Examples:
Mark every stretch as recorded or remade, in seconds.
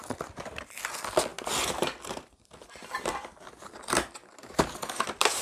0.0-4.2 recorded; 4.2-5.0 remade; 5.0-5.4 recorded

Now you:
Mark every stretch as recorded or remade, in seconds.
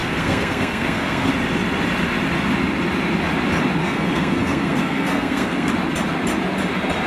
0.0-1.3 remade; 1.3-3.8 recorded; 3.8-5.7 remade; 5.7-7.1 recorded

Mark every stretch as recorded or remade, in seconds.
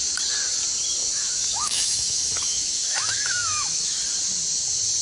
0.0-1.0 recorded; 1.0-4.0 remade; 4.0-5.0 recorded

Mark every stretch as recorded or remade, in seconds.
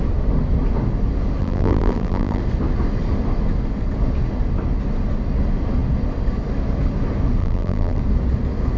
0.0-1.4 recorded; 1.4-2.4 remade; 2.4-7.4 recorded; 7.4-8.0 remade; 8.0-8.8 recorded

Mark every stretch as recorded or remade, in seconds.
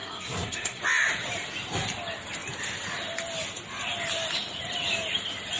0.0-0.8 remade; 0.8-5.6 recorded